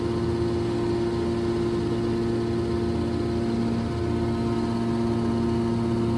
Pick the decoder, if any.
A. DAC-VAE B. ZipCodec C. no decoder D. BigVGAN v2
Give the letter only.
C